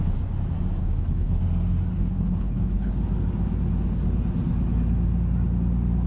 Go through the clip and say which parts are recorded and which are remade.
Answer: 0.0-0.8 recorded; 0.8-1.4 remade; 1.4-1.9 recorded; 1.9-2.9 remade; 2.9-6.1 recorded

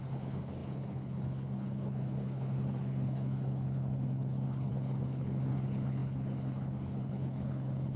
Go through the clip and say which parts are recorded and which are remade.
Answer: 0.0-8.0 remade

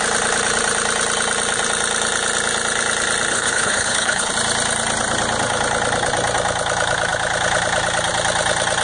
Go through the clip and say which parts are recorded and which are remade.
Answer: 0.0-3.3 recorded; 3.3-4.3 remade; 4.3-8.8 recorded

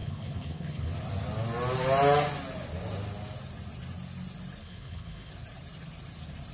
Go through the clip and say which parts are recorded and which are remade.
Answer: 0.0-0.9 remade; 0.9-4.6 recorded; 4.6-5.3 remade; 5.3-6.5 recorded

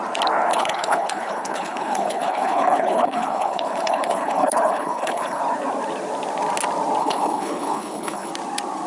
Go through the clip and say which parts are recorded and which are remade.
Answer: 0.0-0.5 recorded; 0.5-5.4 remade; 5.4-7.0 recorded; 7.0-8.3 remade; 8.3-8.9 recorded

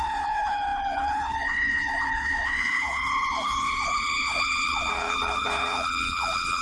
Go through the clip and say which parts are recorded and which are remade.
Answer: 0.0-6.6 remade

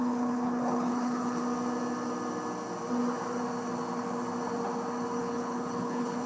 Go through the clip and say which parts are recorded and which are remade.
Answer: 0.0-1.4 remade; 1.4-5.2 recorded; 5.2-6.3 remade